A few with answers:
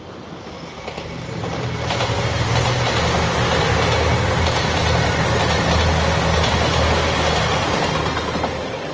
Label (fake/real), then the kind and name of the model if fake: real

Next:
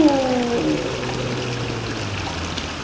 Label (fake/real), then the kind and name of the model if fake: real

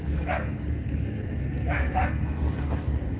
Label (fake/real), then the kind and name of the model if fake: fake, codec, SNAC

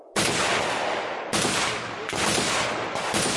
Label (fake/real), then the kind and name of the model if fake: real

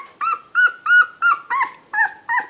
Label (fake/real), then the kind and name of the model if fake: real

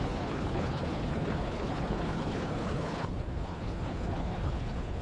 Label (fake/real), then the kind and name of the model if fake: fake, codec, HILCodec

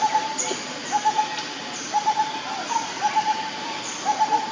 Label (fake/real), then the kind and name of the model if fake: real